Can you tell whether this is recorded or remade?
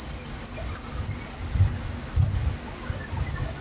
recorded